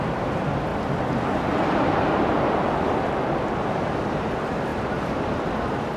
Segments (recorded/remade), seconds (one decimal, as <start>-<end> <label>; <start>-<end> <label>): 0.0-6.0 recorded